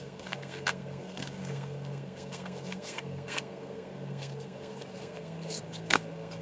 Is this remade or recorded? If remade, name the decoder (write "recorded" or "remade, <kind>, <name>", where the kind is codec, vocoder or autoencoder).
remade, codec, SNAC